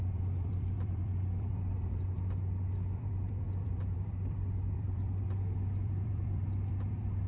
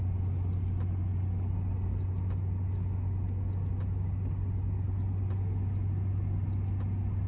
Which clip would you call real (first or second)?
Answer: second